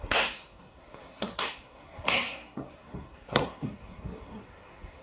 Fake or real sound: fake